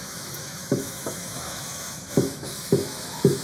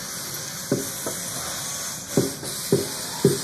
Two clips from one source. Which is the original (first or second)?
second